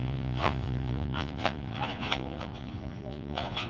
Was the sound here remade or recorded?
remade